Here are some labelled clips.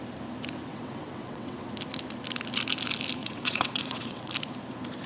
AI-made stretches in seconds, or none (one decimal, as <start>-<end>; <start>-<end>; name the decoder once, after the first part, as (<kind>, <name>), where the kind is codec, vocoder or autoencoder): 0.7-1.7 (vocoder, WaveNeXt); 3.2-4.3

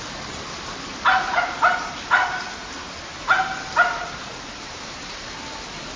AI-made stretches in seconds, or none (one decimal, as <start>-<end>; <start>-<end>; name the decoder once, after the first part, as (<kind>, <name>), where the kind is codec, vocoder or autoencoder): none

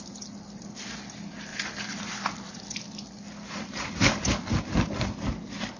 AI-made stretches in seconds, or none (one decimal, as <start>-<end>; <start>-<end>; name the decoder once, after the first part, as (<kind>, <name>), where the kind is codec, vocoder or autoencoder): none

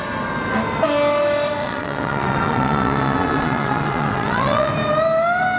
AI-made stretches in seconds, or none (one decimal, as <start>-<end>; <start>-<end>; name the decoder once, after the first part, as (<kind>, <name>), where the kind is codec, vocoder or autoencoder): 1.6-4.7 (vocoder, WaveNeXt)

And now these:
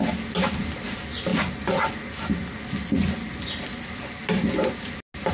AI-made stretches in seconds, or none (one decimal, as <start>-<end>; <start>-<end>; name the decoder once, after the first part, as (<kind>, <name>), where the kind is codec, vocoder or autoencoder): none